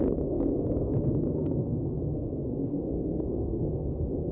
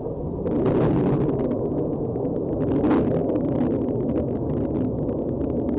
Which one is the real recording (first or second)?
second